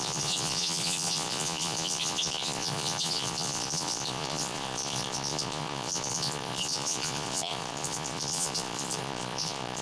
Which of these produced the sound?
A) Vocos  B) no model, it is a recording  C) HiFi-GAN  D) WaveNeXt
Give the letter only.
A